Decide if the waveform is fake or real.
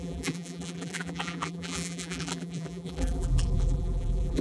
fake